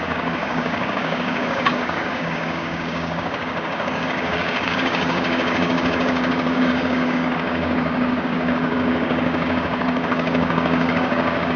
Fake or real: fake